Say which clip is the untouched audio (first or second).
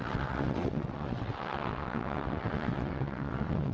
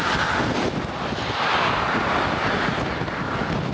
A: second